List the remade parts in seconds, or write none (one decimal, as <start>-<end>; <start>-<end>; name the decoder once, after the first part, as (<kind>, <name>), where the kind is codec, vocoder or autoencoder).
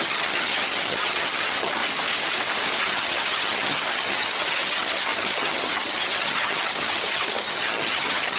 0.0-1.8 (vocoder, HiFi-GAN); 2.8-8.4